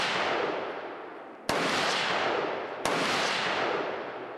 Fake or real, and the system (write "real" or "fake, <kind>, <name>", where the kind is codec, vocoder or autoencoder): real